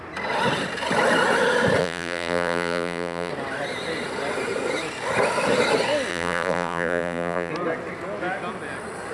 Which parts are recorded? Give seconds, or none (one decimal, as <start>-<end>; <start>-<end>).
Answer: 0.0-1.8; 3.3-6.1; 7.5-9.1